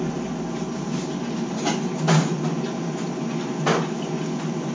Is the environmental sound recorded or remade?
recorded